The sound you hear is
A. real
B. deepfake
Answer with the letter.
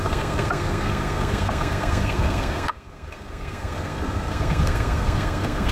B